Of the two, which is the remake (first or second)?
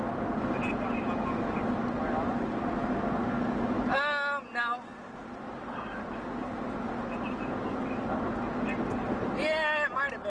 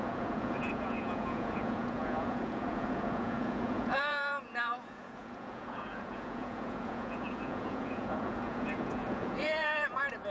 second